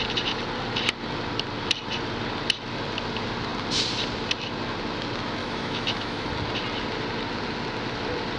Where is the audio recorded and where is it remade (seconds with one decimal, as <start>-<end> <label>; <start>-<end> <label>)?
0.0-5.4 recorded; 5.4-6.3 remade; 6.3-8.4 recorded